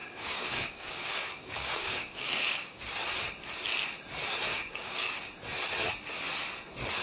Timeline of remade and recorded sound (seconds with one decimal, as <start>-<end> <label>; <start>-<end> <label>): 0.0-2.8 remade; 2.8-4.5 recorded; 4.5-5.1 remade; 5.1-7.0 recorded